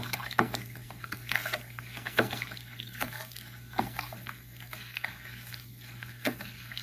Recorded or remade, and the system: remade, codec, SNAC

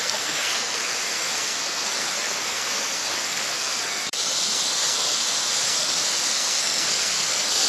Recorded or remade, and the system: remade, codec, SNAC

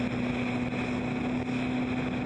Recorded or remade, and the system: recorded